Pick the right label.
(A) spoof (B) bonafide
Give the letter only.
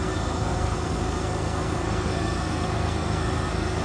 A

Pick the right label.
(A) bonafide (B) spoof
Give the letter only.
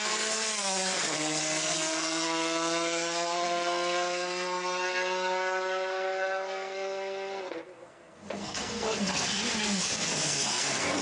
B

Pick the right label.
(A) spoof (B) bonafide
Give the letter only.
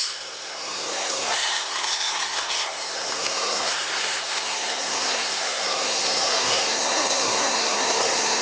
A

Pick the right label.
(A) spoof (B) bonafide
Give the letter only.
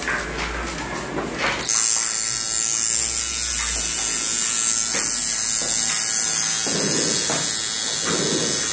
B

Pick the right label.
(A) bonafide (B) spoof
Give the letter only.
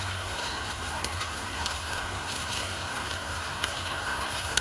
B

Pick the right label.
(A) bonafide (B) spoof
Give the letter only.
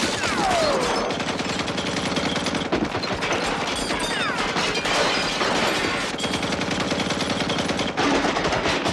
A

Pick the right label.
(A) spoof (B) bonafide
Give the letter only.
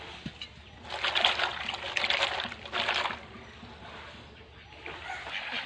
B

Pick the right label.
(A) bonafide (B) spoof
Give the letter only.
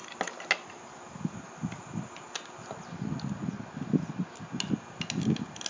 A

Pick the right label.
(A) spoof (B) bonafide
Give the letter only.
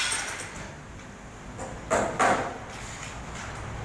B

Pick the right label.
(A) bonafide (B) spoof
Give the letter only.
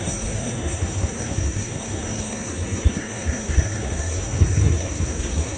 B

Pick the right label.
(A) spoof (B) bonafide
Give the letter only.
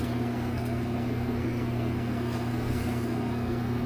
A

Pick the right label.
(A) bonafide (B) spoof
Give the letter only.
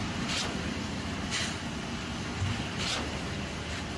A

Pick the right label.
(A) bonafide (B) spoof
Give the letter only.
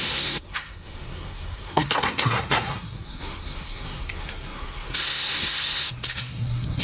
B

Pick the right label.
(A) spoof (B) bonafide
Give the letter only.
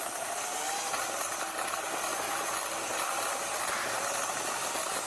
B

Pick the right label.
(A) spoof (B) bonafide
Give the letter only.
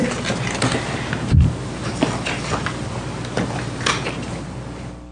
B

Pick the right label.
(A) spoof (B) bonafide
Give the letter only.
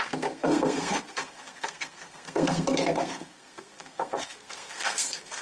A